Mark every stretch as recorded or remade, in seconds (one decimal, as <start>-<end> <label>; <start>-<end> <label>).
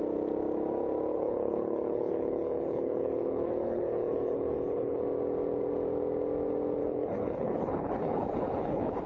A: 0.0-1.1 recorded; 1.1-5.0 remade; 5.0-6.8 recorded; 6.8-9.1 remade